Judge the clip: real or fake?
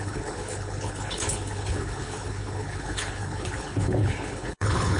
fake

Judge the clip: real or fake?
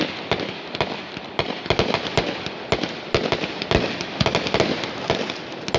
real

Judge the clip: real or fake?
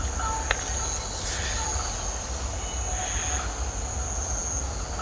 real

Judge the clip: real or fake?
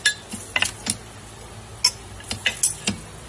real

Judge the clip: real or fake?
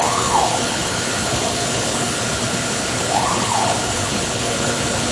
fake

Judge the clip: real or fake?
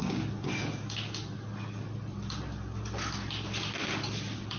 real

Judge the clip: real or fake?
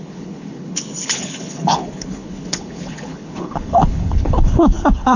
fake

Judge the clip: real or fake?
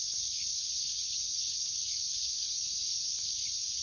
fake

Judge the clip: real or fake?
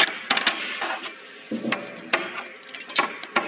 real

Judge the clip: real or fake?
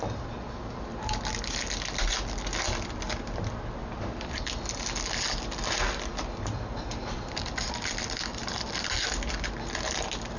real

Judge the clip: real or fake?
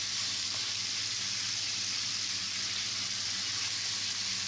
real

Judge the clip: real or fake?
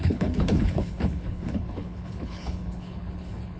fake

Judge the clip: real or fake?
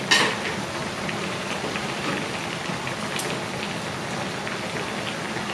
real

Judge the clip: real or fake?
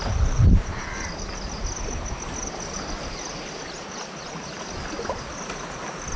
real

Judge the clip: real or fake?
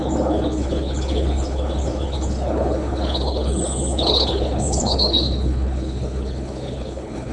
fake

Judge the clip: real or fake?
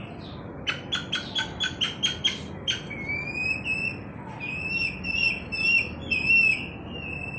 real